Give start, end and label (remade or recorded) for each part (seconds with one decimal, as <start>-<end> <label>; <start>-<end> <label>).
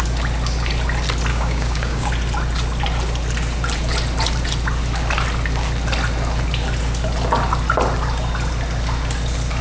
0.0-1.3 recorded; 1.3-2.1 remade; 2.1-9.6 recorded